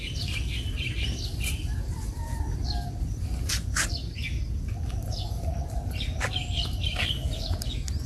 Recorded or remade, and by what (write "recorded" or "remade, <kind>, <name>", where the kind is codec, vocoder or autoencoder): recorded